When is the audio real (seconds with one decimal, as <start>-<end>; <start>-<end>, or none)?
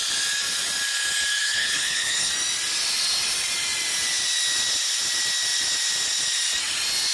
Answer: 0.0-1.4; 2.3-7.1